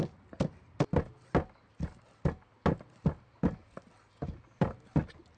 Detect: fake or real real